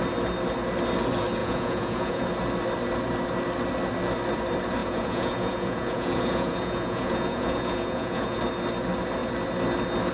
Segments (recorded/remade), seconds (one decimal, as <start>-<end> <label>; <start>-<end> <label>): 0.0-1.4 recorded; 1.4-2.3 remade; 2.3-4.8 recorded; 4.8-8.4 remade; 8.4-10.1 recorded